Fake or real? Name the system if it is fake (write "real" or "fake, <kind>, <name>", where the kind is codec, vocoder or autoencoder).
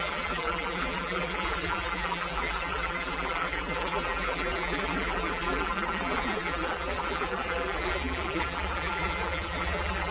fake, vocoder, BigVGAN v2